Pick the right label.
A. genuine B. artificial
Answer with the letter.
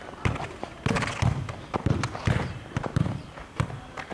B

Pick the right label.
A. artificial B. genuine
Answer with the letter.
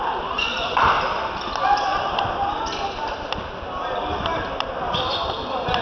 B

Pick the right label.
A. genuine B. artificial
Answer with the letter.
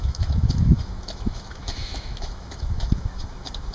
B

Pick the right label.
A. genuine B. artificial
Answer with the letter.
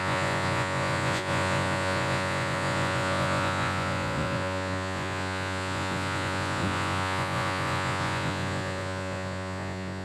B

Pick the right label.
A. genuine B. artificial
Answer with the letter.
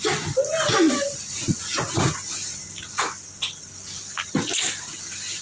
A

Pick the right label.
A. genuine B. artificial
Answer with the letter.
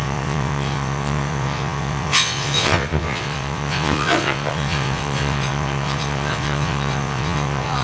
B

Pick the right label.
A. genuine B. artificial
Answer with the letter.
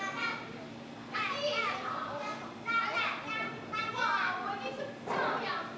A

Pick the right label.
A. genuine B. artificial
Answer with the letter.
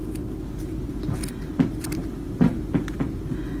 A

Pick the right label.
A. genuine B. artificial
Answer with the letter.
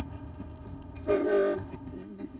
B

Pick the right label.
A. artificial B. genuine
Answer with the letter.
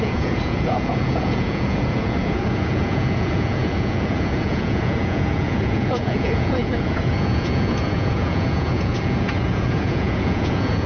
A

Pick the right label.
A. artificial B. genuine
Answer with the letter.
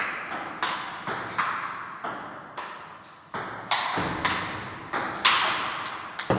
B